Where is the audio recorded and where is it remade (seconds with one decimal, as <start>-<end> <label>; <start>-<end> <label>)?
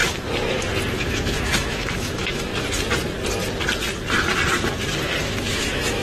0.0-0.9 recorded; 0.9-2.5 remade; 2.5-5.2 recorded; 5.2-6.0 remade